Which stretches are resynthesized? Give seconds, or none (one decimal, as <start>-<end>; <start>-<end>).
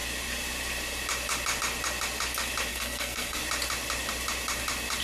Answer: 2.7-3.4